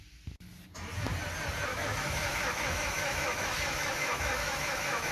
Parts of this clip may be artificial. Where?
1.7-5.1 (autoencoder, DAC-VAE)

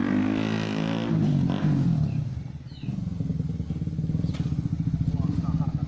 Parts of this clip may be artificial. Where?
none

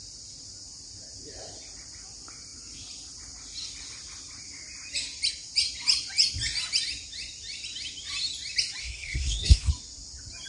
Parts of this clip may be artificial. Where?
8.8-9.7 (codec, SNAC)